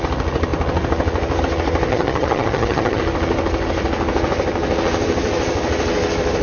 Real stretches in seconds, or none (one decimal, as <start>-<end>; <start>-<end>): 0.0-1.9; 3.0-6.4